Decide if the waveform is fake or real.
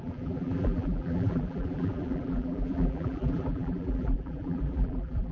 fake